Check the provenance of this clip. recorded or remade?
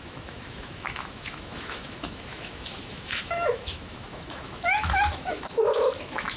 remade